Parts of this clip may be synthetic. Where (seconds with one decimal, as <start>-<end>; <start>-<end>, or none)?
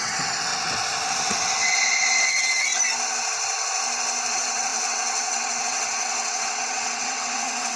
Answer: 0.0-0.5; 2.3-2.7; 4.3-7.8